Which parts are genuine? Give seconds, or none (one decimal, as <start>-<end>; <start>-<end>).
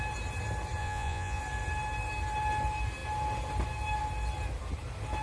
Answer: 0.0-0.8; 1.4-5.2